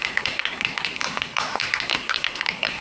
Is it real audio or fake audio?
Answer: fake